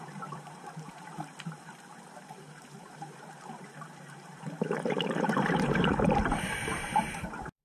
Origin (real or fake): fake